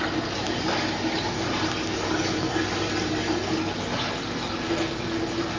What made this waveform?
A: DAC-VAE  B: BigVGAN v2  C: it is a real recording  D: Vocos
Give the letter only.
C